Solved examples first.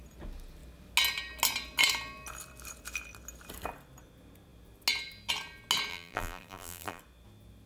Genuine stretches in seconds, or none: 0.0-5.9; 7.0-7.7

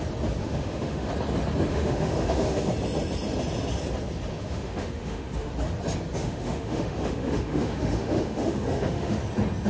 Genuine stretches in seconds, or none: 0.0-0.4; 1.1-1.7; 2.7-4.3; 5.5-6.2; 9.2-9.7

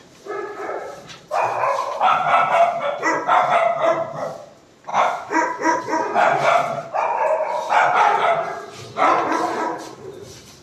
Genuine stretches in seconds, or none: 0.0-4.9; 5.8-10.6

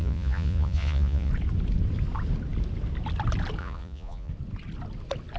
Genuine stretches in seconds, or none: 1.3-3.6; 4.3-5.4

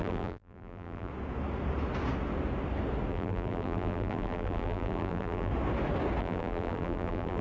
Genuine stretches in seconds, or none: 1.1-3.1; 5.5-6.2

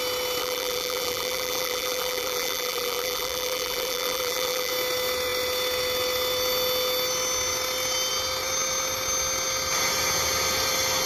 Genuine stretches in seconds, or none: 0.0-0.4; 4.7-11.1

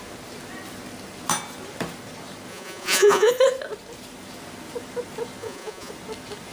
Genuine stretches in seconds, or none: 0.0-2.5; 3.3-5.4; 5.9-6.5

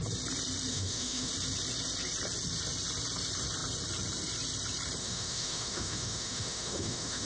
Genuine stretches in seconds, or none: 0.0-0.7; 1.3-5.0